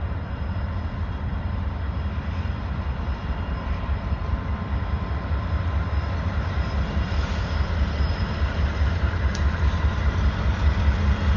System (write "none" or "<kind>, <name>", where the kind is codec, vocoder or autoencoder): vocoder, BigVGAN v2